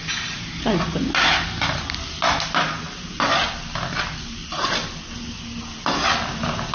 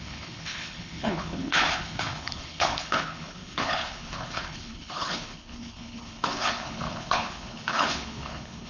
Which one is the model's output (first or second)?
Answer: second